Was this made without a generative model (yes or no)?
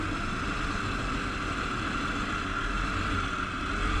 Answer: yes